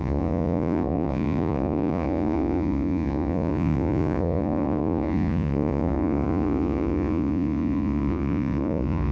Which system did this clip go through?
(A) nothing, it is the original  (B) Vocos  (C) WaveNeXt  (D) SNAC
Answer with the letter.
B